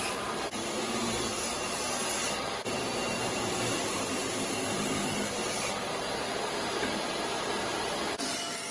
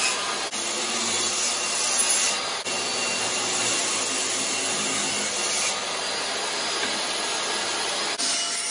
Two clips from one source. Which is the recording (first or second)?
second